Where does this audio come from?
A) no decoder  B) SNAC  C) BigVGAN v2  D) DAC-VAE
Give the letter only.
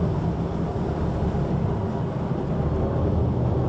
A